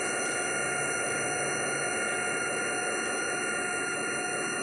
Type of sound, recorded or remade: recorded